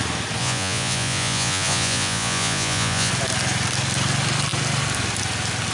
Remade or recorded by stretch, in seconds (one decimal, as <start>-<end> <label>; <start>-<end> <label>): 0.0-0.4 recorded; 0.4-3.1 remade; 3.1-5.7 recorded